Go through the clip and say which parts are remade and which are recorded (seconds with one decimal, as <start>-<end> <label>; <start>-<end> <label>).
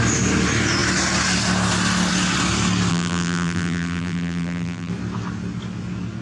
0.0-2.9 recorded; 2.9-4.9 remade; 4.9-6.2 recorded